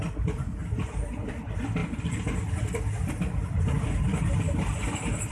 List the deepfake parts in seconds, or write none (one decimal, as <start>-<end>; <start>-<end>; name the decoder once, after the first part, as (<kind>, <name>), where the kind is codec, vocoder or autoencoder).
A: none

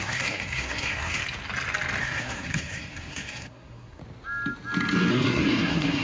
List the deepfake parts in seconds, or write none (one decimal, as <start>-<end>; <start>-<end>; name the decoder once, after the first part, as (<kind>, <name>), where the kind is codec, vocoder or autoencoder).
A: 0.0-1.2 (codec, SNAC); 2.0-4.0; 5.1-6.0

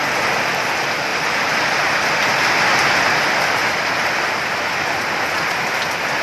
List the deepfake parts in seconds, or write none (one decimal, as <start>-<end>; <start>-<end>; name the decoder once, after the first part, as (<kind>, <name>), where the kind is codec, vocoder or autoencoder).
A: 1.1-2.3 (vocoder, BigVGAN v2)

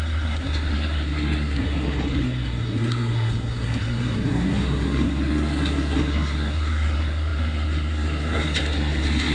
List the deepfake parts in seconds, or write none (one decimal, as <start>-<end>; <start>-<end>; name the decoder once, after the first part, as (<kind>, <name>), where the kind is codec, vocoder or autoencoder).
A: 0.0-9.3 (codec, SNAC)

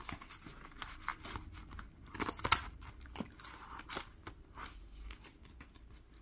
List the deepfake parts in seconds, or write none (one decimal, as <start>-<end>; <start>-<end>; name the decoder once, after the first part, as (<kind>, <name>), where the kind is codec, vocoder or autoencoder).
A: none

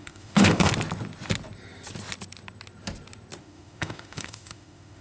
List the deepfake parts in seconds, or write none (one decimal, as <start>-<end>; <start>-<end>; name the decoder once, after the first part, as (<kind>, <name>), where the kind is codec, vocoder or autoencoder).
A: 0.0-0.7 (autoencoder, DAC-VAE); 3.4-5.0